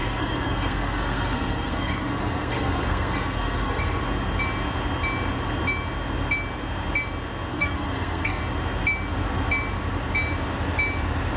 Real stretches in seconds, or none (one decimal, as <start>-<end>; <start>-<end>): 4.0-7.5; 8.4-11.4

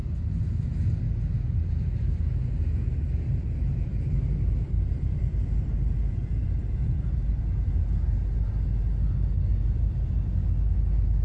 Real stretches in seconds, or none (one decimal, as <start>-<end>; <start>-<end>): 0.0-3.9; 5.4-6.4; 7.7-11.2

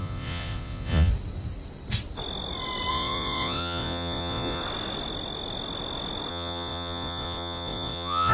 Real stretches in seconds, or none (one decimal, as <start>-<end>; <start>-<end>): 1.1-2.9; 4.6-6.3

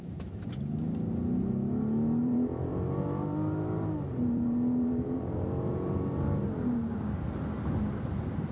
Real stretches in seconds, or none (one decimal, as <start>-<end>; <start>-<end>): 0.0-2.2; 6.5-8.5

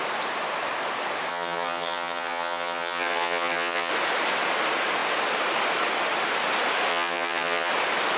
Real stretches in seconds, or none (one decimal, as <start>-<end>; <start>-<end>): 0.0-1.3; 3.9-6.9; 7.7-8.2

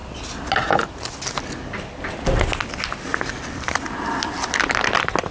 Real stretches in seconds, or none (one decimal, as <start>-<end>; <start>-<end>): 0.0-5.3